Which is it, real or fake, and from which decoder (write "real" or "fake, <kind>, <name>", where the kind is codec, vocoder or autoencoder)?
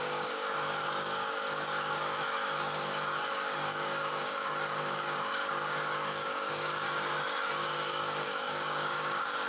fake, codec, DAC